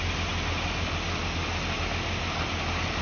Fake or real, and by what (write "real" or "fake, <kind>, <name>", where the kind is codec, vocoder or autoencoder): real